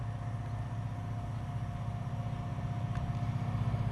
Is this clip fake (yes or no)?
no